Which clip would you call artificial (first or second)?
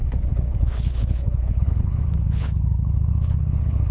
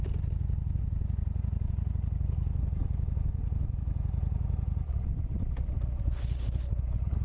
first